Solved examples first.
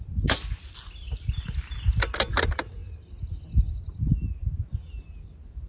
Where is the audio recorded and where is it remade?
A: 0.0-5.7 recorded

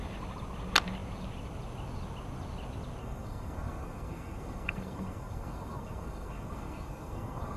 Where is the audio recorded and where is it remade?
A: 0.0-3.0 recorded; 3.0-7.6 remade

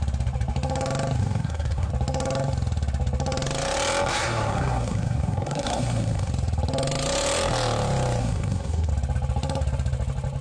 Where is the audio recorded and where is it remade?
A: 0.0-1.2 recorded; 1.2-1.9 remade; 1.9-4.1 recorded; 4.1-6.3 remade; 6.3-8.2 recorded; 8.2-8.9 remade; 8.9-10.4 recorded

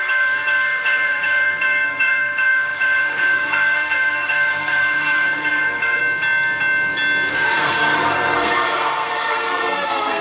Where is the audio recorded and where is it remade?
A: 0.0-6.0 remade; 6.0-7.3 recorded; 7.3-10.2 remade

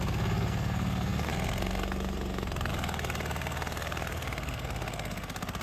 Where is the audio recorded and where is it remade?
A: 0.0-5.6 remade

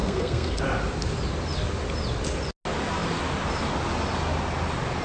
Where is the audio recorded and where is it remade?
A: 0.0-0.6 remade; 0.6-5.0 recorded

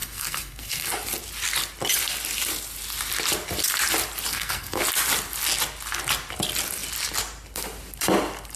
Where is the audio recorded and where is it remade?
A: 0.0-0.9 remade; 0.9-4.3 recorded; 4.3-4.8 remade; 4.8-8.6 recorded